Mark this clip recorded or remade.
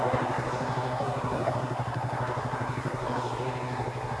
remade